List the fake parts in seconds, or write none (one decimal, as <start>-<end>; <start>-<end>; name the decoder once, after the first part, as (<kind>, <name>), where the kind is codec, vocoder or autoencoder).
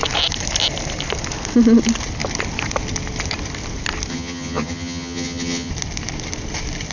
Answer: 4.1-5.7 (vocoder, HiFi-GAN)